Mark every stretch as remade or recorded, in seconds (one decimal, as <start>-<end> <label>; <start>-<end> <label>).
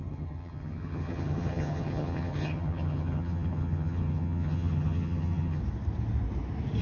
0.0-5.6 remade; 5.6-6.8 recorded